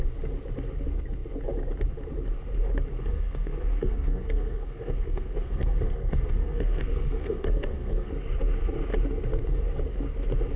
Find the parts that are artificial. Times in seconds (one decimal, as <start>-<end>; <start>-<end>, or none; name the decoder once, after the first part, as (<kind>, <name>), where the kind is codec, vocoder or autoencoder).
3.0-8.1 (codec, SNAC)